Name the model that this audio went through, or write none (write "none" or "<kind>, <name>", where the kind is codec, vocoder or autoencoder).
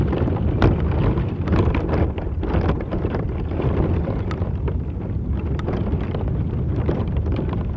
vocoder, BigVGAN v2